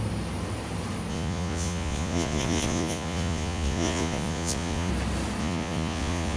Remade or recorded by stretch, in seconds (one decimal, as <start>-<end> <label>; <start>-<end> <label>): 0.0-1.1 recorded; 1.1-4.9 remade; 4.9-5.4 recorded; 5.4-6.4 remade